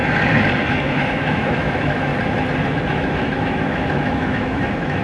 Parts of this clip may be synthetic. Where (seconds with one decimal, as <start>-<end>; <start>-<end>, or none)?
0.7-2.1; 2.9-5.0